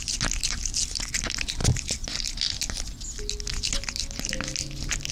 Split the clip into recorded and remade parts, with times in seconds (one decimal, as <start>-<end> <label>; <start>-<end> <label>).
0.0-5.1 recorded